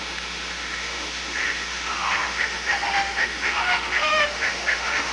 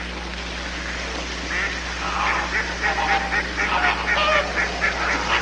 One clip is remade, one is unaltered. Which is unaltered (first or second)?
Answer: second